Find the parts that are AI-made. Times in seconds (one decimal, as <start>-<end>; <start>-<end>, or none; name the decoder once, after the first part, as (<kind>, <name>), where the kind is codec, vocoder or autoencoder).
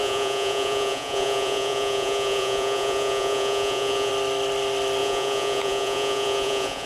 0.0-4.1 (vocoder, Vocos); 5.0-6.9